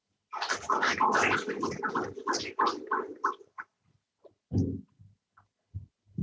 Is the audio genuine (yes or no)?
yes